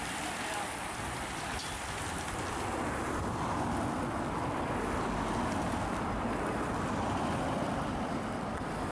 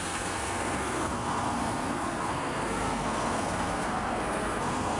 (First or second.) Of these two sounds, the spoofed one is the second